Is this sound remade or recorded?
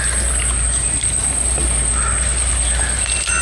recorded